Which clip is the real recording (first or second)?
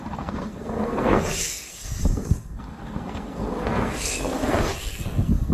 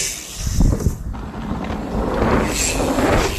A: second